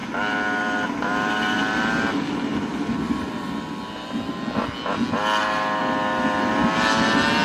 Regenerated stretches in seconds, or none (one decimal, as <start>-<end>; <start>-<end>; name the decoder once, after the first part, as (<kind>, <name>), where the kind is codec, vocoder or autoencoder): none